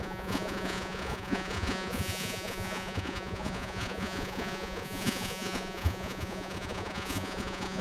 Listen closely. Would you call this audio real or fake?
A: fake